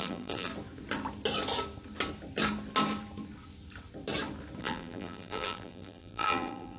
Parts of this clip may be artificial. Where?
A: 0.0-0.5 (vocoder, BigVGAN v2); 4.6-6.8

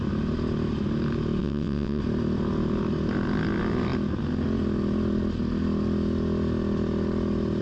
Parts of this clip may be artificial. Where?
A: 1.4-2.0 (vocoder, WaveNeXt)

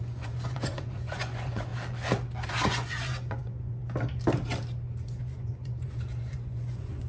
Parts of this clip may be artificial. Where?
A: 0.0-1.7 (vocoder, Vocos); 2.5-3.8; 5.2-7.1

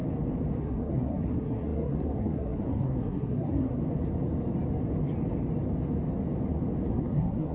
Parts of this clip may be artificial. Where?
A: 0.6-3.8 (codec, SNAC); 6.9-7.5

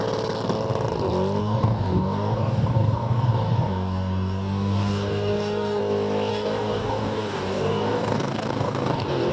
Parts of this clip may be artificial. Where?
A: 1.4-5.8 (codec, DAC); 6.3-9.3